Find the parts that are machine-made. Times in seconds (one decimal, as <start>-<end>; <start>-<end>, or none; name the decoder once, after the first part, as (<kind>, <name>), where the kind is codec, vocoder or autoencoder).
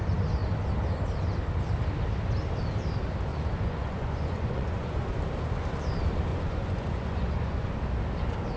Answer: 3.3-5.1 (vocoder, Vocos); 6.3-7.8